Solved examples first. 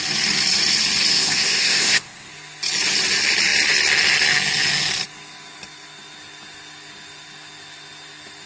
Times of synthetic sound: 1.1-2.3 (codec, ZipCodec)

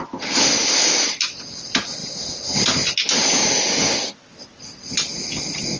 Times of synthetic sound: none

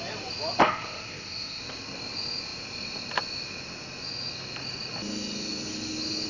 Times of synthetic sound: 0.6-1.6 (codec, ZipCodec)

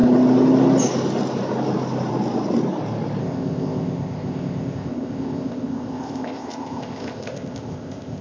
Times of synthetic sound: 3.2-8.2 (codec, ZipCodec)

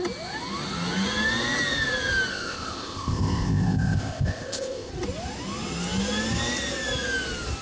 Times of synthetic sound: 2.3-4.9 (codec, ZipCodec)

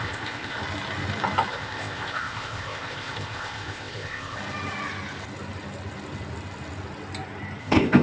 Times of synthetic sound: 0.0-0.6 (codec, ZipCodec); 1.5-4.4; 7.6-8.0

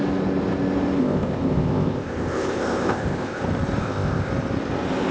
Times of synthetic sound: 1.0-3.4 (codec, ZipCodec); 3.8-4.3

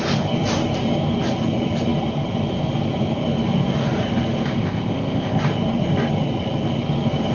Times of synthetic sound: 4.6-5.4 (codec, ZipCodec)